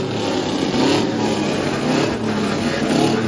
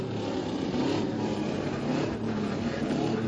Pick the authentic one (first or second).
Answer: first